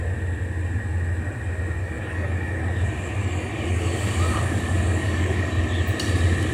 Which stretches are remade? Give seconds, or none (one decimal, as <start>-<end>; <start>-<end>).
1.8-2.6; 3.2-5.6